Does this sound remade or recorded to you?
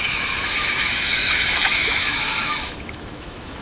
remade